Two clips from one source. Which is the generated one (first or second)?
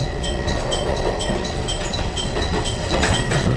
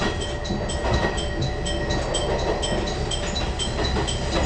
first